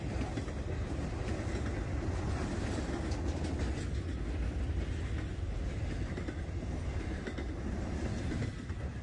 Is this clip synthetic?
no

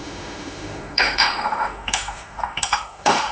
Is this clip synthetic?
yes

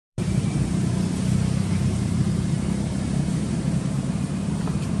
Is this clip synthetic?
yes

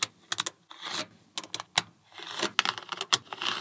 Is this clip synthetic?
no